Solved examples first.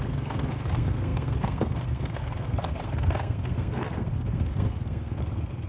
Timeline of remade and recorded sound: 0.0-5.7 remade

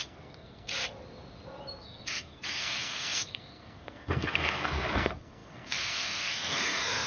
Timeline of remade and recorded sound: 0.0-0.7 remade; 0.7-1.8 recorded; 1.8-7.1 remade

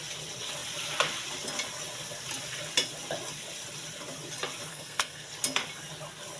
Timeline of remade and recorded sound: 0.0-4.7 recorded; 4.7-5.3 remade; 5.3-6.4 recorded

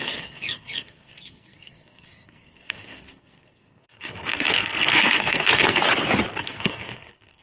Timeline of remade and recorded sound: 0.0-5.8 remade; 5.8-6.4 recorded; 6.4-7.4 remade

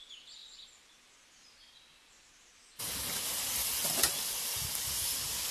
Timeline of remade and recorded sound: 0.0-5.5 recorded

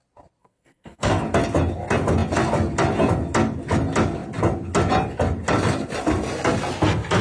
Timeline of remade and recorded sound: 0.0-0.4 recorded; 0.4-1.2 remade; 1.2-7.2 recorded